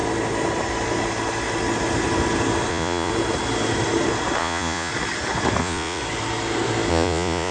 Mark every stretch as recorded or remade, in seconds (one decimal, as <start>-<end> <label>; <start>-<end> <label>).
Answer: 0.0-2.7 recorded; 2.7-3.1 remade; 3.1-4.4 recorded; 4.4-4.9 remade; 4.9-5.6 recorded; 5.6-6.0 remade; 6.0-6.9 recorded; 6.9-7.5 remade